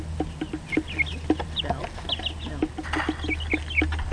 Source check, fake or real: real